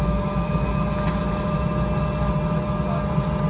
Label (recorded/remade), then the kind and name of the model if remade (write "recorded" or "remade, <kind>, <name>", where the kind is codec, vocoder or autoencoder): recorded